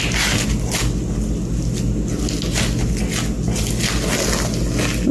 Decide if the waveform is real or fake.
real